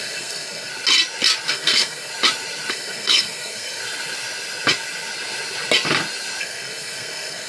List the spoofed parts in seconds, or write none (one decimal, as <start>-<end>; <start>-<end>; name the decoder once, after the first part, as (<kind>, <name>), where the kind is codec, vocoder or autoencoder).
0.0-0.7 (codec, SNAC); 1.5-2.1; 2.7-3.8; 6.4-7.5